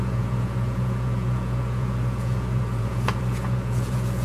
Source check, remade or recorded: remade